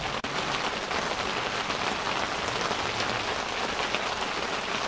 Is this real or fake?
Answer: real